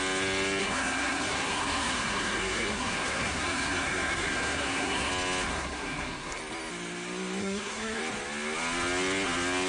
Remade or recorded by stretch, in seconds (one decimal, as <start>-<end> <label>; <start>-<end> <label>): 0.0-0.6 recorded; 0.6-5.1 remade; 5.1-5.5 recorded; 5.5-6.4 remade; 6.4-7.4 recorded; 7.4-8.0 remade; 8.0-9.7 recorded